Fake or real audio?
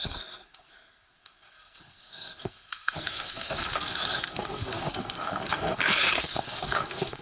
fake